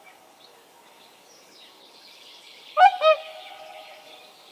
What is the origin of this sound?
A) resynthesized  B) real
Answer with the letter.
A